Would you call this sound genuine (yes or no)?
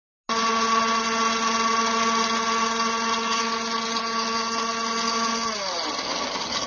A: yes